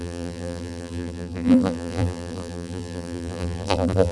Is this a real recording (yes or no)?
no